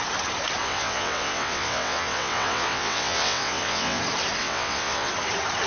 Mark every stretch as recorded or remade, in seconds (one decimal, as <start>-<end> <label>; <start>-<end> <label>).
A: 0.0-0.6 recorded; 0.6-4.0 remade; 4.0-4.4 recorded; 4.4-5.1 remade; 5.1-5.7 recorded